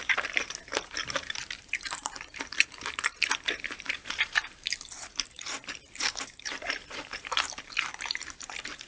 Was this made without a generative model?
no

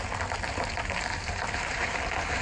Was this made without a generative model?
no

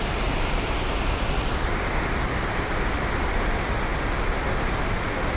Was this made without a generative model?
yes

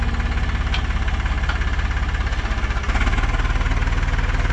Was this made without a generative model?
yes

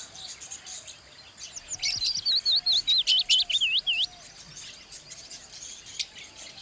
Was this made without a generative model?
yes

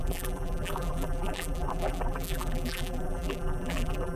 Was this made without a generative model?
no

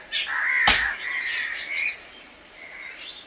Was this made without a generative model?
yes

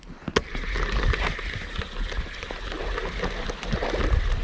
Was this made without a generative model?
yes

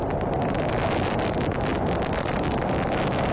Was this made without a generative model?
yes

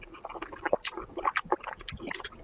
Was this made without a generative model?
yes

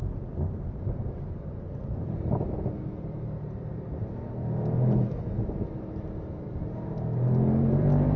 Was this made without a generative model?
no